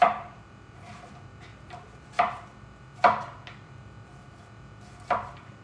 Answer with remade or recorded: recorded